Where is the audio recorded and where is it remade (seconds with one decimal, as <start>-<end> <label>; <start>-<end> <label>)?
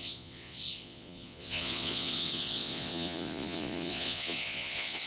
0.0-5.1 remade